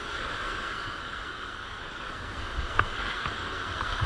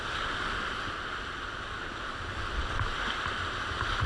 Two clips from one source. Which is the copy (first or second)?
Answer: first